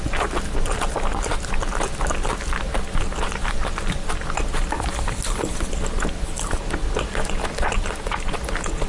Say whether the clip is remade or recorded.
recorded